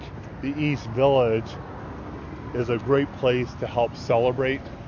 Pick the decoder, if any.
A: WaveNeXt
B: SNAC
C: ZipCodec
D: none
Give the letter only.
D